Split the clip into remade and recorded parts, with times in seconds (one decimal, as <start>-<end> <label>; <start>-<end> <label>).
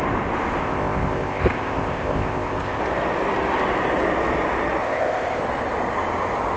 0.0-0.6 recorded; 0.6-2.8 remade; 2.8-4.8 recorded; 4.8-5.4 remade; 5.4-6.6 recorded